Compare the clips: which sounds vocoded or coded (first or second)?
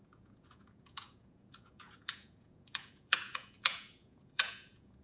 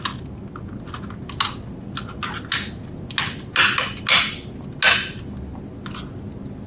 first